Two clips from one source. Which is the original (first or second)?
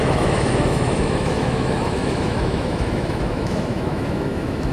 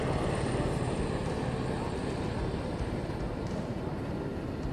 second